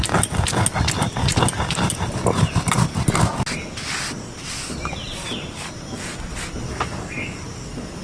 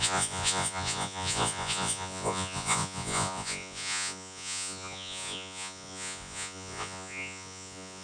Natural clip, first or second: first